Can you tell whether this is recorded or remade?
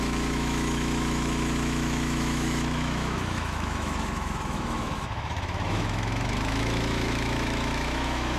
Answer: remade